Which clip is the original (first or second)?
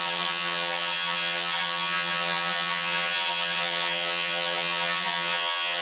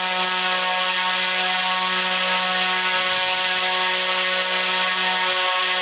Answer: second